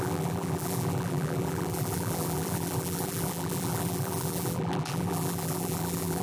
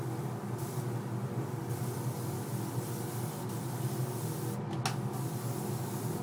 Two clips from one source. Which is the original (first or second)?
second